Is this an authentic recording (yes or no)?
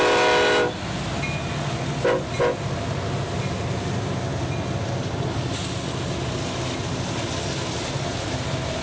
yes